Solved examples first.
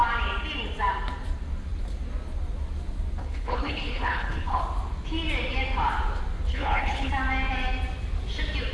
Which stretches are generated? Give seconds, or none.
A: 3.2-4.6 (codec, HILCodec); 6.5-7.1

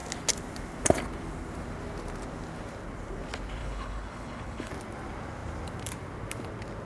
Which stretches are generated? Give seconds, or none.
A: 3.6-4.7 (codec, HILCodec)

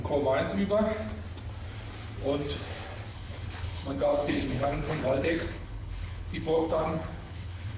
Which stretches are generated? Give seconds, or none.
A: 3.1-7.8 (codec, HILCodec)

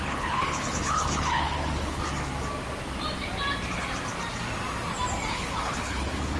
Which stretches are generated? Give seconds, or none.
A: 0.0-2.1 (codec, HILCodec); 5.3-6.4